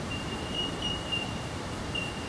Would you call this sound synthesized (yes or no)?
yes